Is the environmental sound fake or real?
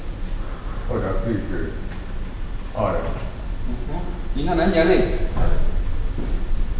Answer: real